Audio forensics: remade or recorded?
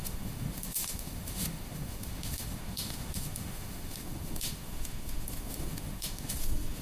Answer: remade